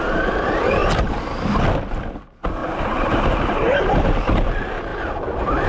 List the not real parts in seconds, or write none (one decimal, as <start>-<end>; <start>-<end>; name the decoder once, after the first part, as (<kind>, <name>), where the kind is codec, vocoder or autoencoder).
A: 0.0-0.8 (vocoder, BigVGAN v2); 1.9-2.6; 4.1-5.7